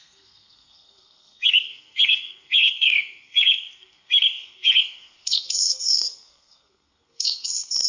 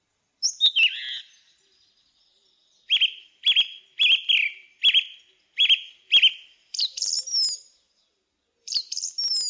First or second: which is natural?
second